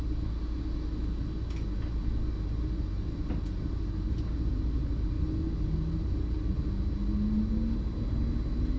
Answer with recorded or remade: recorded